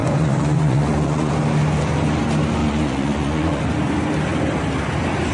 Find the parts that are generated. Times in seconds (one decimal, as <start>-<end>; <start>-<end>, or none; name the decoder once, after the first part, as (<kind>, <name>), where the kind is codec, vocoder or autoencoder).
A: 0.0-1.3 (vocoder, Vocos); 2.6-3.6